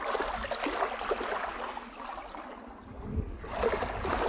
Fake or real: real